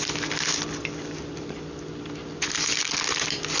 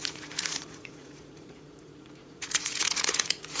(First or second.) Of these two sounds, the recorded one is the first